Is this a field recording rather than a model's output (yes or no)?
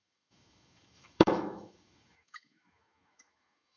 no